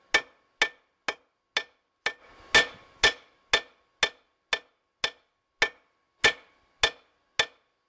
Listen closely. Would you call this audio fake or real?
real